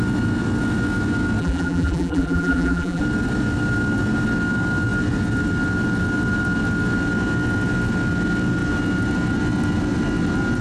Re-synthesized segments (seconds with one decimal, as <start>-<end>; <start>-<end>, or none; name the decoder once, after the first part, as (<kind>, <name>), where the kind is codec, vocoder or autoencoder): 1.4-3.0 (vocoder, BigVGAN v2)